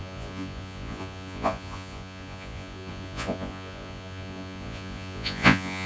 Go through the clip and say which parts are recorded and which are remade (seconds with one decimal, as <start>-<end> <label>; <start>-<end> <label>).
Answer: 0.0-5.9 remade